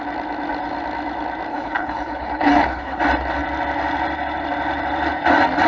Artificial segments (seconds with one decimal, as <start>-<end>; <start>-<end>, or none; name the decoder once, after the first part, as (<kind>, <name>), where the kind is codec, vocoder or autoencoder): 1.5-3.0 (codec, HILCodec)